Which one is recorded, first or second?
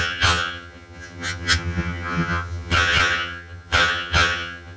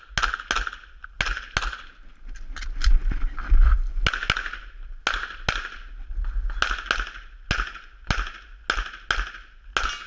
second